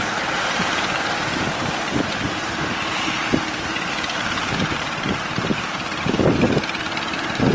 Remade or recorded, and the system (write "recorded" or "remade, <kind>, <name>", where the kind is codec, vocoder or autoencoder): remade, vocoder, BigVGAN v2